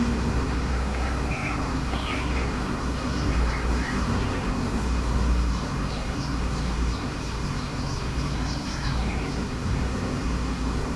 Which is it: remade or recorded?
remade